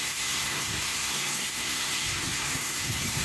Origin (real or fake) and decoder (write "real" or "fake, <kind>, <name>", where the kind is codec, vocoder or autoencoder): fake, codec, SNAC